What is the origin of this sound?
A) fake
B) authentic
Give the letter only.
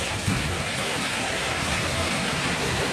A